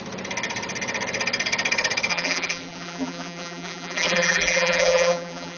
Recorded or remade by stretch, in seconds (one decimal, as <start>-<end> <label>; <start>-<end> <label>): 0.0-2.1 recorded; 2.1-5.6 remade